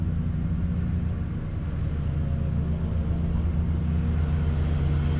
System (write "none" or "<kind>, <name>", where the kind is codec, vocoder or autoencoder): none